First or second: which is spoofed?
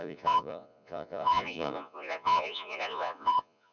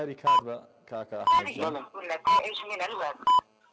first